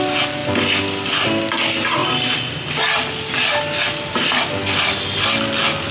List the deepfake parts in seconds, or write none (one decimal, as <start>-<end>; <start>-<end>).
none